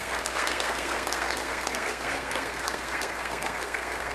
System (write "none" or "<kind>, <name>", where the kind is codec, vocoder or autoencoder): codec, SNAC